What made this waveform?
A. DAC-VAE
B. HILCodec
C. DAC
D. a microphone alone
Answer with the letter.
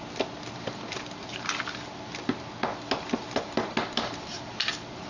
D